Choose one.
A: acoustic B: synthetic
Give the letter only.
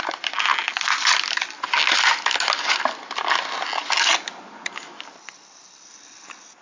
A